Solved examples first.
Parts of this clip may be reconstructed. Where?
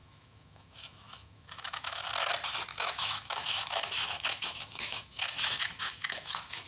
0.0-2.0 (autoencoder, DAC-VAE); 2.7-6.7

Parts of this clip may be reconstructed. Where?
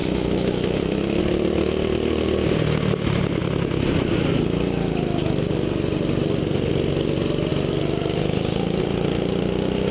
0.0-1.2 (autoencoder, DAC-VAE)